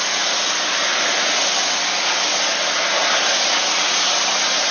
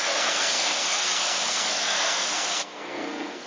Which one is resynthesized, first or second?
second